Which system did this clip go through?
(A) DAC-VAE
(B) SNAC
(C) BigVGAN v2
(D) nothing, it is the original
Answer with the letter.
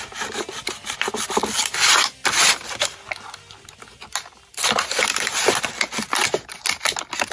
D